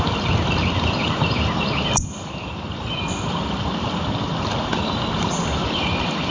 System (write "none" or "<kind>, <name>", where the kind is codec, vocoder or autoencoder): none